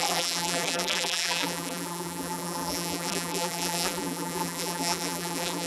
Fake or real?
fake